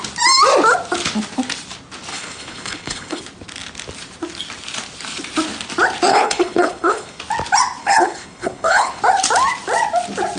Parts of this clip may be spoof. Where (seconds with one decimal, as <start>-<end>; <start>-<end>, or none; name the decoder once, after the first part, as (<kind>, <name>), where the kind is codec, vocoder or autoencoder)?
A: 2.1-3.2 (codec, HILCodec); 6.1-7.2; 7.8-9.0